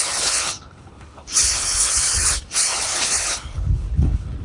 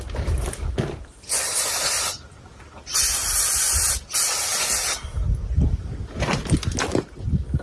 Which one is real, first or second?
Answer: second